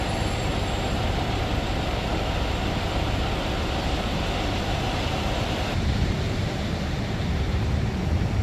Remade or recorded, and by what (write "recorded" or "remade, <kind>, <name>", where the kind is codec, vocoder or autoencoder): remade, vocoder, BigVGAN v2